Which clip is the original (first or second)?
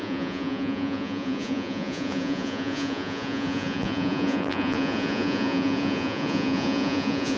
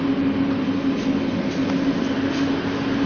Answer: second